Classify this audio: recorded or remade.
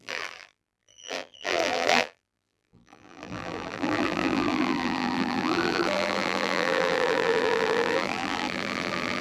remade